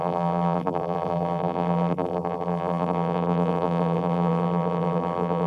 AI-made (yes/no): yes